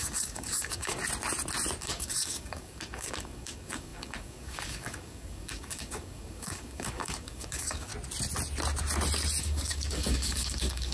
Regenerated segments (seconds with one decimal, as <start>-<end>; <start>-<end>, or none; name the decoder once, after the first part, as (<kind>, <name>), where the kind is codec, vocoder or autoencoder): 0.0-1.0 (codec, DAC); 1.8-7.9; 9.4-10.9